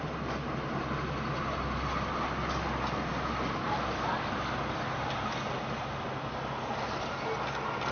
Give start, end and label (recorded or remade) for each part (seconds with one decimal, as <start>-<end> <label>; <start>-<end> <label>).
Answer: 0.0-7.9 recorded